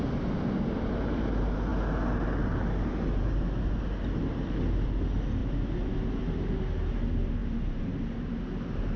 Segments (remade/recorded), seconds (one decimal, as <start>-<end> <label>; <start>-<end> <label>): 0.0-9.0 recorded